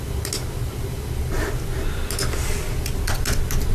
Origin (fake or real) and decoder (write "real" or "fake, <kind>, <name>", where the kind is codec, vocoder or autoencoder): real